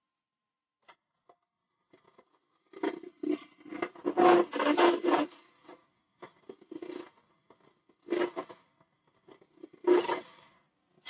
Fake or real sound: real